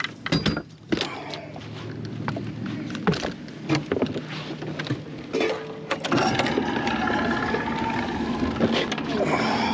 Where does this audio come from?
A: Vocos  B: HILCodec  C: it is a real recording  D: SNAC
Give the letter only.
C